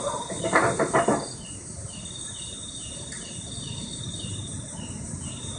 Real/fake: fake